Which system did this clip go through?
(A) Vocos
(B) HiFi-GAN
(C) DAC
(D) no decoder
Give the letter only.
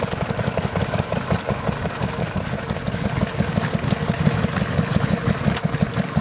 C